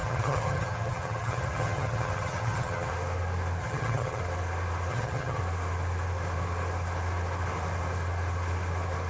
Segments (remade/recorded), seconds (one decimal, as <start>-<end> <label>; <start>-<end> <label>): 0.0-2.9 remade; 2.9-3.6 recorded; 3.6-4.2 remade; 4.2-4.9 recorded; 4.9-5.4 remade; 5.4-9.1 recorded